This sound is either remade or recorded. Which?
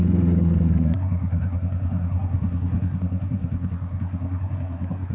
remade